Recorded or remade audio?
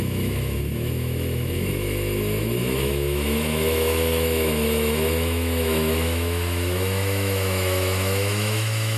remade